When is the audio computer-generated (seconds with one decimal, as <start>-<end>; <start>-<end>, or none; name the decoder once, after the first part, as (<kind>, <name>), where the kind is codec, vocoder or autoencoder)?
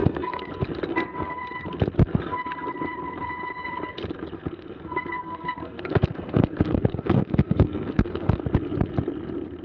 0.0-0.5 (codec, SNAC); 0.9-1.4; 4.4-8.4